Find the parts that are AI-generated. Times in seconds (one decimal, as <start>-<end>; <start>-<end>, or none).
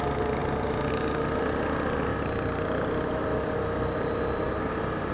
none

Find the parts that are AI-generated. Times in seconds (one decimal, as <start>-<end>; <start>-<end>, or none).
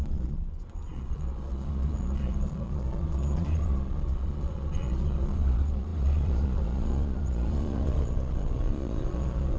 0.0-9.6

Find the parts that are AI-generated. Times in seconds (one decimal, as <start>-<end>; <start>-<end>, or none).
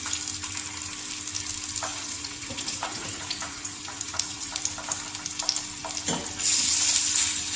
1.9-4.6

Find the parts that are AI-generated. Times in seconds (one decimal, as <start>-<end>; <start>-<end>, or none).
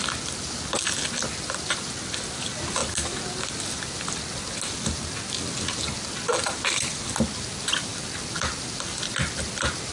none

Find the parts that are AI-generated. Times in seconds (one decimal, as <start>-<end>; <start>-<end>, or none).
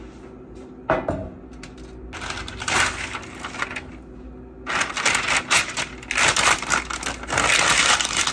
none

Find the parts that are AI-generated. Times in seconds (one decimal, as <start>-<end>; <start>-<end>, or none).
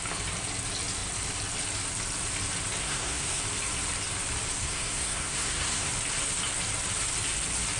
2.8-3.4; 4.6-5.9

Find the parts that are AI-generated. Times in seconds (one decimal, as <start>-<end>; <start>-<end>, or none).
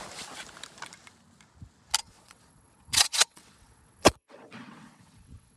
2.0-5.6